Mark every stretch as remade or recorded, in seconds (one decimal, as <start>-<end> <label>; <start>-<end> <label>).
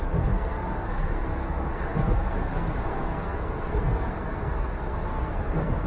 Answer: 0.0-5.9 remade